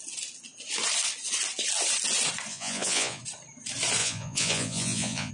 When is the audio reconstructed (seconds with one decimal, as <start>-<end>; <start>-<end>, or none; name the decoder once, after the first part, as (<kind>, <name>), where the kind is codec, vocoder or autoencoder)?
2.5-3.2 (vocoder, Vocos); 4.0-5.3